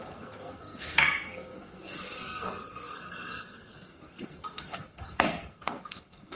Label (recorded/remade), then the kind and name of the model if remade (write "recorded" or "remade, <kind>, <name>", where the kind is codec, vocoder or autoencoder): remade, codec, SNAC